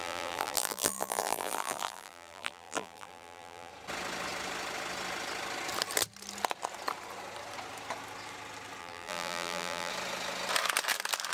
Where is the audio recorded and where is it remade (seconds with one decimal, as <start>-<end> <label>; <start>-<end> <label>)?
0.0-3.7 remade; 3.7-8.8 recorded; 8.8-9.9 remade; 9.9-11.3 recorded